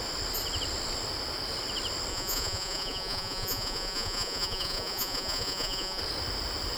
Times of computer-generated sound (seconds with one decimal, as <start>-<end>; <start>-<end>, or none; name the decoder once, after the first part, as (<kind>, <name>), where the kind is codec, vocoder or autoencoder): 2.1-6.0 (vocoder, Vocos)